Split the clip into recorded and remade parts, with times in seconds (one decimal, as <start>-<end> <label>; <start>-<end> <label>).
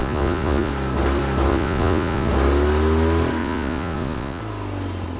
0.0-0.7 remade; 0.7-1.5 recorded; 1.5-2.3 remade; 2.3-3.4 recorded; 3.4-4.4 remade; 4.4-5.2 recorded